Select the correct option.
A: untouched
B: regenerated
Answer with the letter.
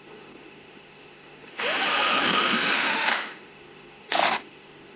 B